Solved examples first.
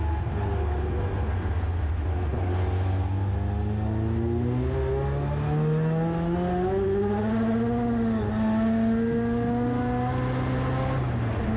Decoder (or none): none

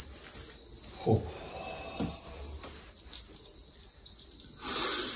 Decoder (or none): none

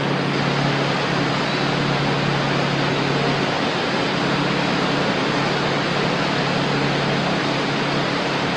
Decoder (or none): none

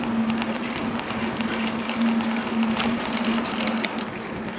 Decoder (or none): none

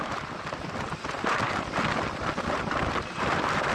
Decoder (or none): vocoder, BigVGAN v2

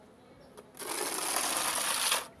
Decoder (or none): none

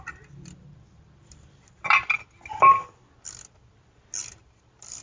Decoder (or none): none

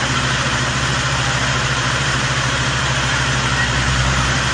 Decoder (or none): vocoder, BigVGAN v2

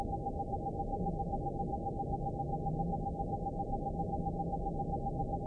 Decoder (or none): none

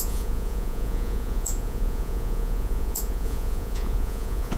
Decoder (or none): vocoder, Vocos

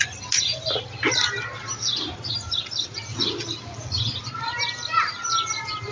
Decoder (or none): none